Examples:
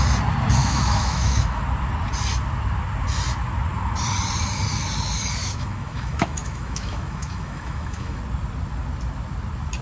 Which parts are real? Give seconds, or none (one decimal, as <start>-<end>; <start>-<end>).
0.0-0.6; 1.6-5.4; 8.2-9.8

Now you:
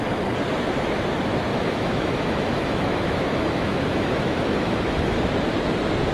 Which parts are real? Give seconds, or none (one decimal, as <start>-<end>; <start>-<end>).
0.0-1.5; 5.2-6.1

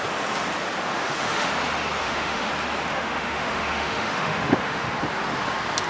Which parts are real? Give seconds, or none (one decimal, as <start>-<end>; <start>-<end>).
0.0-0.9; 1.5-2.0; 2.5-2.9; 4.9-5.9

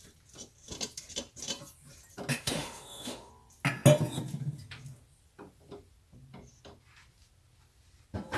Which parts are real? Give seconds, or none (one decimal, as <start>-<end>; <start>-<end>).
0.0-2.3; 3.3-8.4

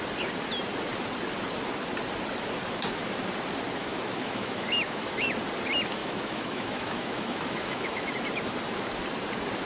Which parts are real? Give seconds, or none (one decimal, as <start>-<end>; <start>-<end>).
0.0-3.8; 5.3-6.0; 8.1-9.7

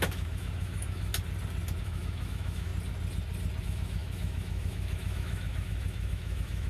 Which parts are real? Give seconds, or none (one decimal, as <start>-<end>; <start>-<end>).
1.1-1.8; 2.7-3.6

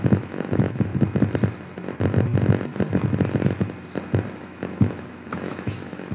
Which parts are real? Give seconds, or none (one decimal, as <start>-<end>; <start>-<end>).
0.9-4.4